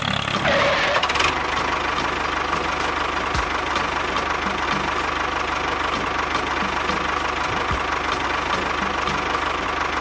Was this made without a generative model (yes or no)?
yes